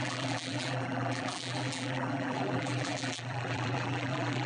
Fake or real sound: fake